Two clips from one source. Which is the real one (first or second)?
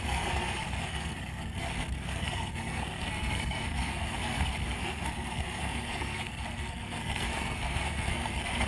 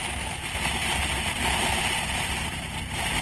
second